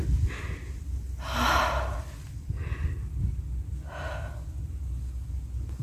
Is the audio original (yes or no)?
yes